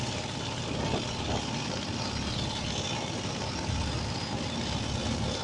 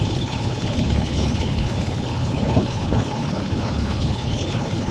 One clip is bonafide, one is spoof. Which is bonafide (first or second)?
first